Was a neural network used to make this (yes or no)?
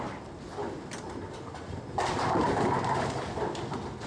no